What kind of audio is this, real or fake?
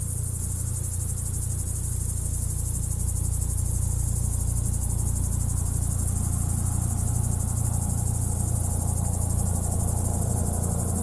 real